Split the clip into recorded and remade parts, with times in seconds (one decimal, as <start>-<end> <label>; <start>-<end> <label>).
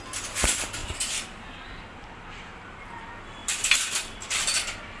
0.0-0.8 recorded; 0.8-2.6 remade; 2.6-3.4 recorded; 3.4-5.0 remade